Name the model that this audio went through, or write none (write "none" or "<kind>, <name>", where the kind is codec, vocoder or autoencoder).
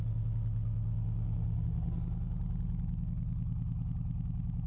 none